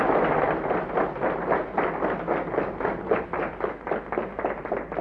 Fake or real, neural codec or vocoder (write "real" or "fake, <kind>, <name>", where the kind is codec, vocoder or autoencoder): real